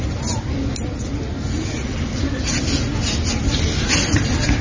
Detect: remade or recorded recorded